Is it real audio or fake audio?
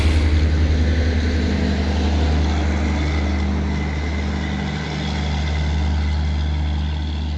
real